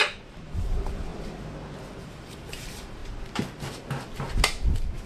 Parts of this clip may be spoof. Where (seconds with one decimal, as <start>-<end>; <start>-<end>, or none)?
0.0-1.1; 2.0-3.0